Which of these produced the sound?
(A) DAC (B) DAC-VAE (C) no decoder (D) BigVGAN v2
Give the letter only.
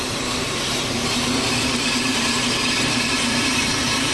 D